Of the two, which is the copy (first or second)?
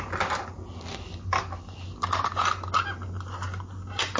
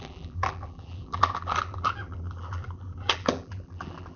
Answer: second